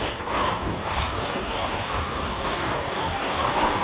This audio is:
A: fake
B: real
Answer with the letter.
A